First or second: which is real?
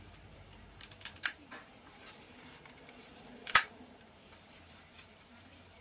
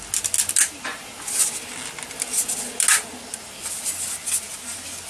second